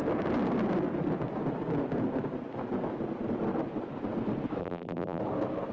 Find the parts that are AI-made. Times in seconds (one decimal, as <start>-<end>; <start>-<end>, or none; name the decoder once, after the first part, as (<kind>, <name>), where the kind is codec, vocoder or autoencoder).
4.6-5.2 (vocoder, BigVGAN v2)